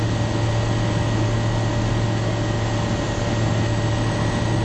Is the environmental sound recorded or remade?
recorded